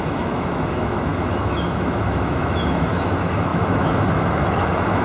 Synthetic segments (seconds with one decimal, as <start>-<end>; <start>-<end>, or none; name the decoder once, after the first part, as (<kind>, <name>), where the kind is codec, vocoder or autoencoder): 0.0-5.0 (autoencoder, DAC-VAE)